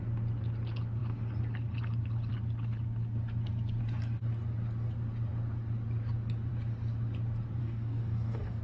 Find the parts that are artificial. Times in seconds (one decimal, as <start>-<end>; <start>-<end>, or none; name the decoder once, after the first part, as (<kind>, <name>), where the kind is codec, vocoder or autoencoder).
7.6-8.6 (codec, DAC)